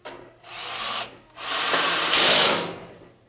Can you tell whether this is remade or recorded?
recorded